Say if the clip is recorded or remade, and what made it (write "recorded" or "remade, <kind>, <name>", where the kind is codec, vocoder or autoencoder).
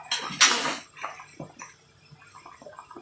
recorded